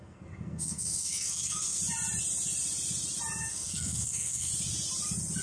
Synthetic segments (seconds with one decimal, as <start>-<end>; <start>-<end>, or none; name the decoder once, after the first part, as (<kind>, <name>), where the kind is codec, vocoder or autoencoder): 0.0-1.8 (codec, SNAC); 3.4-4.5